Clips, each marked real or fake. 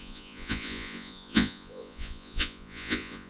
fake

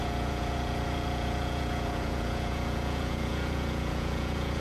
fake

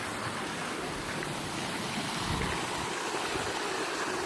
real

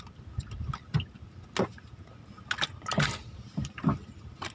real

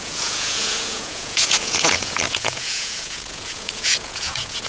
fake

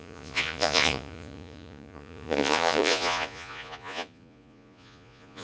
fake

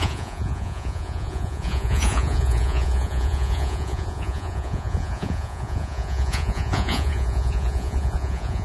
fake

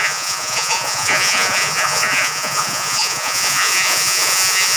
fake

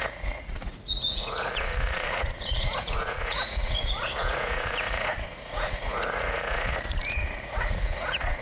fake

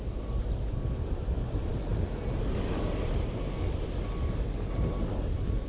real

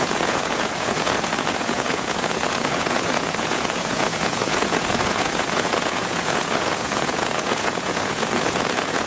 fake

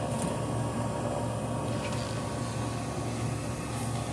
real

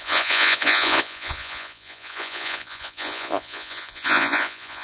fake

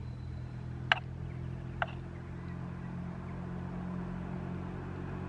real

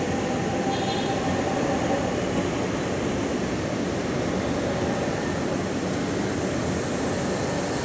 real